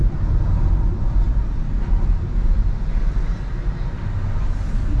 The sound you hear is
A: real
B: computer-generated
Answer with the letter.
A